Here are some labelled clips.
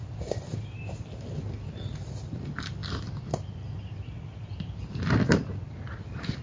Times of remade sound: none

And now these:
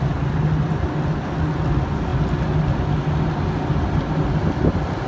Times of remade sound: none

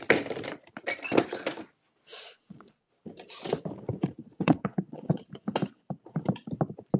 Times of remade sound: 2.1-2.9 (vocoder, Vocos); 4.2-5.3

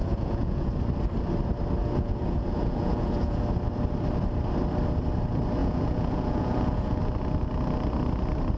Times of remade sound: 0.0-0.7 (vocoder, Vocos); 1.8-3.4; 5.6-7.0

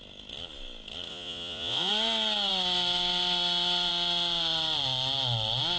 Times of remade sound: 1.1-1.9 (vocoder, Vocos)

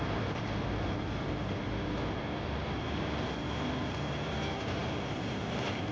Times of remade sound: none